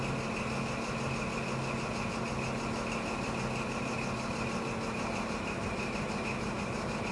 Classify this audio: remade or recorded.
recorded